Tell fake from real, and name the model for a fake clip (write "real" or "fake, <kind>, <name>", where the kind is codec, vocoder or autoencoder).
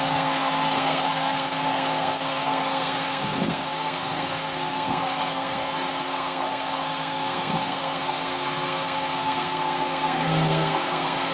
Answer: fake, codec, SNAC